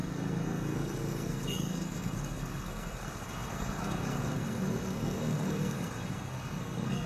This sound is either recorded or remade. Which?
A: remade